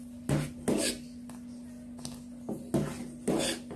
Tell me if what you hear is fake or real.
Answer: real